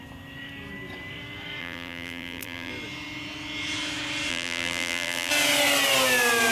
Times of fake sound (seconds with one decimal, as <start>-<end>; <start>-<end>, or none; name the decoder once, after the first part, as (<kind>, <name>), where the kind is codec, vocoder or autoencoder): 1.6-2.7 (vocoder, BigVGAN v2); 4.3-5.3